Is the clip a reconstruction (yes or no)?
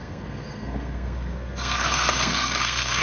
yes